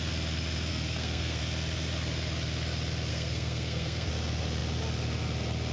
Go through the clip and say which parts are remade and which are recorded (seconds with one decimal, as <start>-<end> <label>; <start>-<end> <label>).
0.0-0.7 recorded; 0.7-1.4 remade; 1.4-3.1 recorded; 3.1-4.1 remade; 4.1-5.7 recorded